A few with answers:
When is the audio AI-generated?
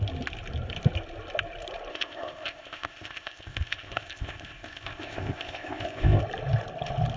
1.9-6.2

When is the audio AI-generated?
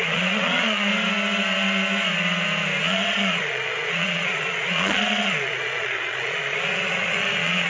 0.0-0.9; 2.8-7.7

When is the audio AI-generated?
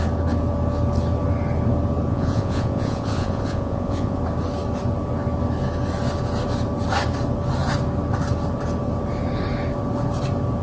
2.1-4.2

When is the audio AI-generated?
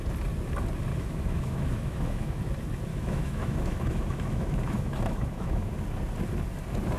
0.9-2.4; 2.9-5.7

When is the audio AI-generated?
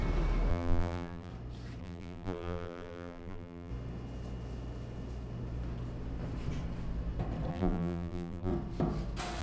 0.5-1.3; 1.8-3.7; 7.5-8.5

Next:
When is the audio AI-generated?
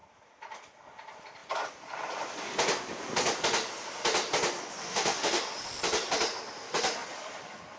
4.8-5.4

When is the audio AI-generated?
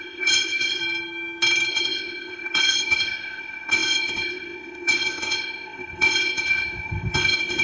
0.0-0.8; 1.7-7.6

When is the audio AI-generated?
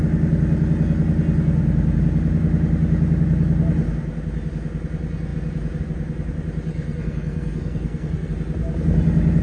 6.7-8.3